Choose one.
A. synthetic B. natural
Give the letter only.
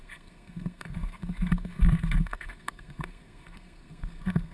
A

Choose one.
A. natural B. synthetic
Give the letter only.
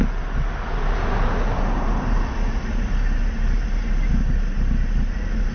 A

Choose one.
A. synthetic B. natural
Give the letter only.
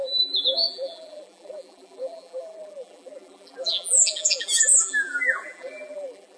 A